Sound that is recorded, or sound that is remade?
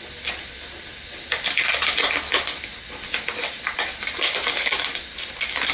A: recorded